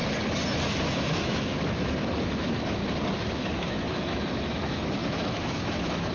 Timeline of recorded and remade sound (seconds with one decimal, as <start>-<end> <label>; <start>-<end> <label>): 0.0-0.8 recorded; 0.8-2.8 remade; 2.8-3.3 recorded; 3.3-6.1 remade